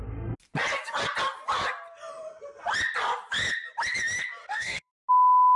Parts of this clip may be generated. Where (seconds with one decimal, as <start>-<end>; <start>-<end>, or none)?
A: 4.4-4.9